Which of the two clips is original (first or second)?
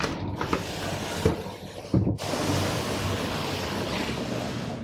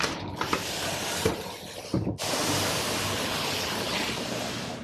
first